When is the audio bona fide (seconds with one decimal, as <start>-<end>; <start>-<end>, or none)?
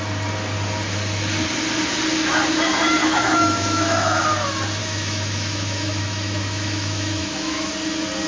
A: 0.0-3.0; 4.2-4.8; 7.7-8.3